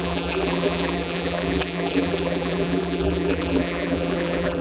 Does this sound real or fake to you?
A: fake